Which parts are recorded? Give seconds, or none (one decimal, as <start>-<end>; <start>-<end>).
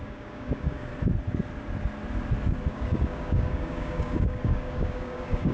0.9-2.7